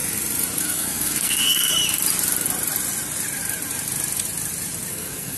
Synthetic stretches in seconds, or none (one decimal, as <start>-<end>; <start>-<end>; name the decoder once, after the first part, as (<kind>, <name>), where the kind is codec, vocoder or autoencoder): 0.6-1.7 (codec, SNAC); 4.9-5.4